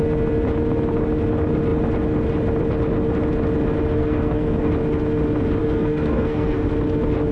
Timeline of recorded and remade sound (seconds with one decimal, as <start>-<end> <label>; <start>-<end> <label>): 0.0-4.0 recorded; 4.0-4.7 remade; 4.7-5.6 recorded; 5.6-6.7 remade; 6.7-7.3 recorded